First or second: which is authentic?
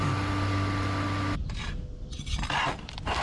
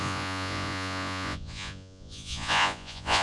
first